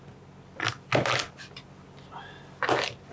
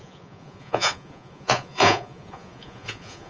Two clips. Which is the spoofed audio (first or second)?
second